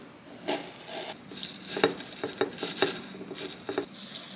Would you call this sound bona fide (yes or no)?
yes